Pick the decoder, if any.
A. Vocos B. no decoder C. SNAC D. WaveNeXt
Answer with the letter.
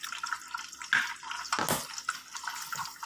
B